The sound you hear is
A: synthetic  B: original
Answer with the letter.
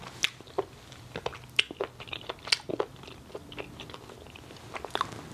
B